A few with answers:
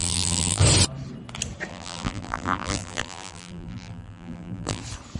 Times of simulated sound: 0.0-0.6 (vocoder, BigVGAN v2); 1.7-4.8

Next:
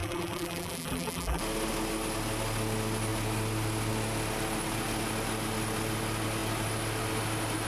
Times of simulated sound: 0.0-1.4 (vocoder, BigVGAN v2)

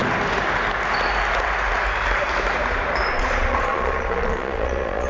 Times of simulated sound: 3.1-5.1 (vocoder, Vocos)

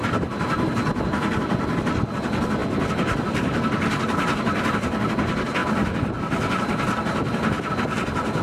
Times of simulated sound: 2.6-5.0 (vocoder, BigVGAN v2); 5.6-7.7

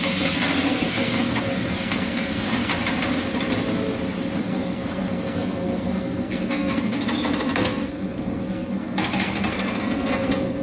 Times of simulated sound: 0.0-2.7 (codec, SNAC); 4.4-10.6

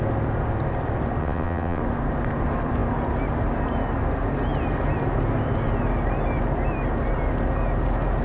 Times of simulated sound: 1.2-1.8 (vocoder, WaveNeXt)

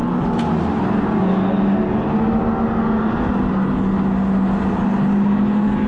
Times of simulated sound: none

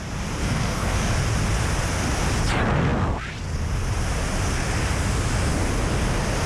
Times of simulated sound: 0.4-1.1 (codec, DAC)